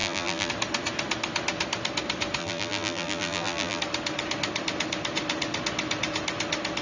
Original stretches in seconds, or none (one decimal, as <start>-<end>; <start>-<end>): 0.5-2.4; 3.8-6.8